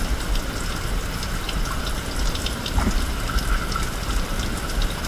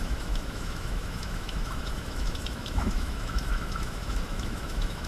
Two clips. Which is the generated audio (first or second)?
second